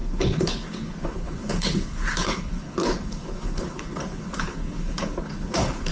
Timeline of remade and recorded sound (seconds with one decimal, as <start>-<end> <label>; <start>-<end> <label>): 0.0-5.9 remade